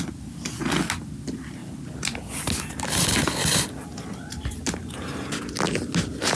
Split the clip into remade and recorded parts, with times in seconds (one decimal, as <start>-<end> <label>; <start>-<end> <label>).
0.0-6.3 recorded